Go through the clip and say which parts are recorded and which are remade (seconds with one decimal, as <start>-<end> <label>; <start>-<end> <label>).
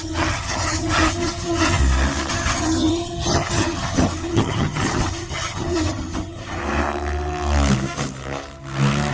0.0-1.8 remade; 1.8-2.3 recorded; 2.3-6.6 remade; 6.6-9.1 recorded